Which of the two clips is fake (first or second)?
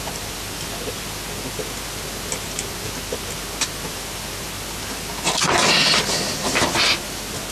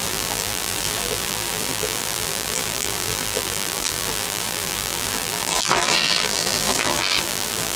second